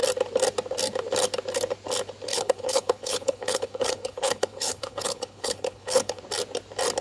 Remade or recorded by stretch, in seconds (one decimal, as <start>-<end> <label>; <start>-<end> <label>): 0.0-2.3 recorded; 2.3-6.2 remade; 6.2-7.0 recorded